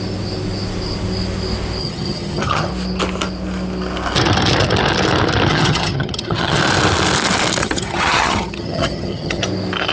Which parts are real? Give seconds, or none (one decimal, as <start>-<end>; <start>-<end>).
0.0-1.8; 2.7-5.5; 6.6-7.6; 9.4-9.9